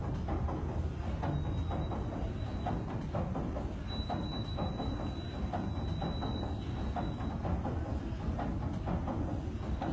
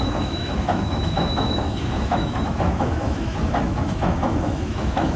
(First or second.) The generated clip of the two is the second